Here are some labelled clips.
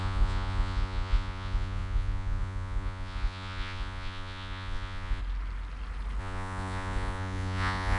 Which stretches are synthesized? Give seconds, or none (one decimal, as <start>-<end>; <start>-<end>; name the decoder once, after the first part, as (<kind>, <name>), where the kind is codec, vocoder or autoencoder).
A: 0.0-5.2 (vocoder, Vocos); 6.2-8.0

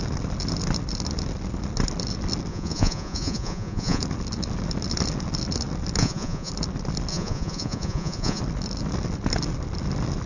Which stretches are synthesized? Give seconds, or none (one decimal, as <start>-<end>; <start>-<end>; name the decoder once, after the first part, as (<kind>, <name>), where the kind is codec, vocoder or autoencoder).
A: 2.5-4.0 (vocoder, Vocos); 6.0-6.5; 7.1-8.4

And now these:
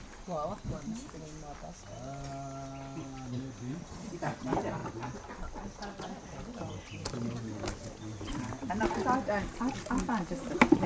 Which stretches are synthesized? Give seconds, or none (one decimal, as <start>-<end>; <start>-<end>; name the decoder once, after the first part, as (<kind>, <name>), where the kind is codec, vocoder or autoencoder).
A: none

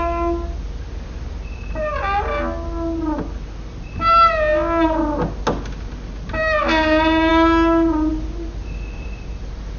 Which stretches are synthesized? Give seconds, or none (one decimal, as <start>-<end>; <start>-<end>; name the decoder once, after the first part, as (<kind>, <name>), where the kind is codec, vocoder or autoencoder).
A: none

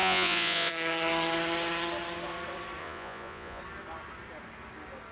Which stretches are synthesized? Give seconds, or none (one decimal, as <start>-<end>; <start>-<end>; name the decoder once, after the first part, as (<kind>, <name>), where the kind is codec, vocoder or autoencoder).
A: 0.0-0.7 (vocoder, Vocos); 2.8-3.6

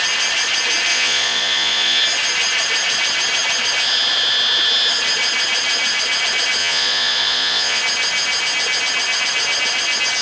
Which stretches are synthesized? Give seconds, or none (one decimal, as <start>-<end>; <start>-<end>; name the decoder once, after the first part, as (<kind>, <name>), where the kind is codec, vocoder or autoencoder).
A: 0.9-2.0 (vocoder, Vocos); 6.6-7.8

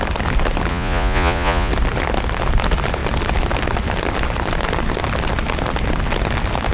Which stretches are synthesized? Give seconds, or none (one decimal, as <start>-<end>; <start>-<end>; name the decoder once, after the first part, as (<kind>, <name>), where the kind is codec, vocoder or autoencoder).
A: 0.7-1.7 (vocoder, Vocos)